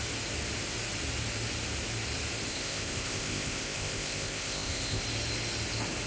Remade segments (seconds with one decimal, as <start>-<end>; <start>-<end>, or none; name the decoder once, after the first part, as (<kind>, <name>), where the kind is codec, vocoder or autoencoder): 2.5-5.0 (codec, ZipCodec)